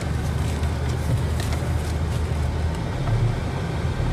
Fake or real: real